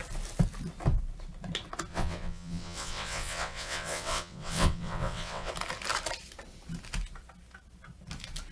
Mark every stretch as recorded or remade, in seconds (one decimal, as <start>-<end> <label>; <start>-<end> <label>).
0.0-1.9 recorded; 1.9-5.5 remade; 5.5-8.5 recorded